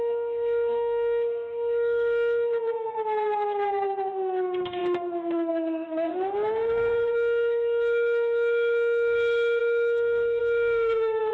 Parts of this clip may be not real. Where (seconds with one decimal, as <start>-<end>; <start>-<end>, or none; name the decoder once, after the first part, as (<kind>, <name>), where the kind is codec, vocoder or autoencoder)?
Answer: 0.0-11.3 (autoencoder, DAC-VAE)